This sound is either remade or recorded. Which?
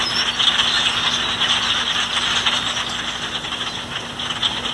recorded